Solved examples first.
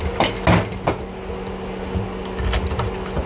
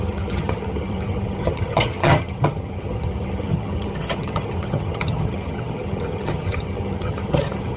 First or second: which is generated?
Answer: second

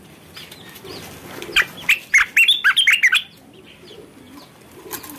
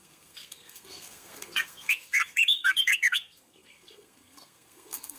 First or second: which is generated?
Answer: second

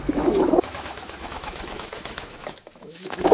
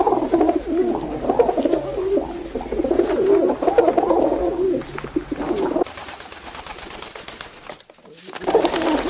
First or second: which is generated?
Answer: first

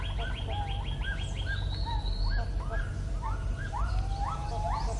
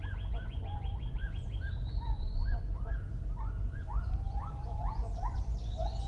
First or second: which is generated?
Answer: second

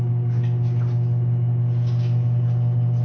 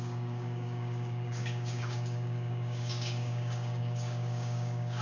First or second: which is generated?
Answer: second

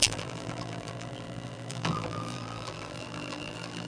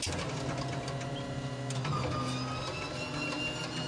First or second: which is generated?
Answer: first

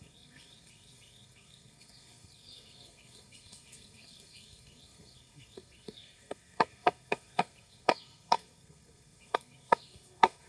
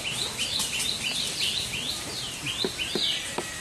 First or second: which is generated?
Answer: first